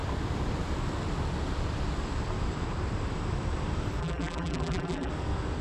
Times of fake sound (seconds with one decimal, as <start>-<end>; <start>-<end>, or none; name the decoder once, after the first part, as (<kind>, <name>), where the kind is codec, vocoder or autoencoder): 4.0-5.1 (vocoder, BigVGAN v2)